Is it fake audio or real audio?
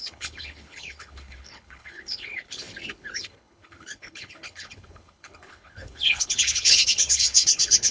fake